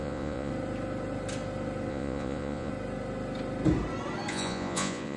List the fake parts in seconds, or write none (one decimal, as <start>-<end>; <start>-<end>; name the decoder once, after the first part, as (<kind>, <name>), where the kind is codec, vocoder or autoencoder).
0.0-0.5 (vocoder, Vocos); 1.9-2.7; 4.3-5.2